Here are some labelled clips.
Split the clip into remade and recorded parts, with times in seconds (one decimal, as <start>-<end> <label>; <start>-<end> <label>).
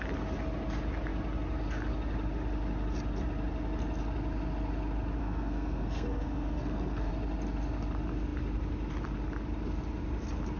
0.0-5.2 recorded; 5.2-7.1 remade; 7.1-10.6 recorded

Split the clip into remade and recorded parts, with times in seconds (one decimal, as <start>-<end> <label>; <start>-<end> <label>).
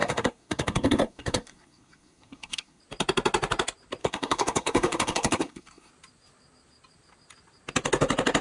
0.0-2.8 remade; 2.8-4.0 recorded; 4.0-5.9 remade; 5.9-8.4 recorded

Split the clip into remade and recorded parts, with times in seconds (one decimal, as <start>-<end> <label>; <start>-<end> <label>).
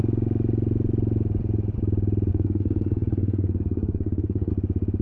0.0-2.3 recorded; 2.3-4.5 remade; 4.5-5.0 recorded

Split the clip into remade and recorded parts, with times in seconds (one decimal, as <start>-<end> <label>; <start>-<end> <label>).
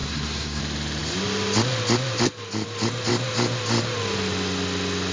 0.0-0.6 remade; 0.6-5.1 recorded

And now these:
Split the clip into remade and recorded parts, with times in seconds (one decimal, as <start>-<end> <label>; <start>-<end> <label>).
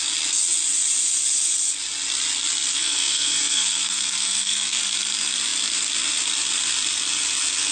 0.0-2.7 recorded; 2.7-4.8 remade; 4.8-7.7 recorded